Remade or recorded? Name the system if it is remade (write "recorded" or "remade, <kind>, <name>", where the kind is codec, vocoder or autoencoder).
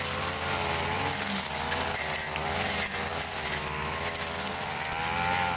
recorded